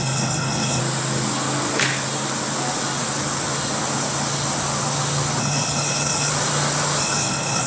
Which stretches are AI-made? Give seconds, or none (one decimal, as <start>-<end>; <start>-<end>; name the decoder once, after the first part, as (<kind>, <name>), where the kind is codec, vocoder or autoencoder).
0.0-0.8 (codec, HILCodec); 5.4-6.3; 7.0-7.7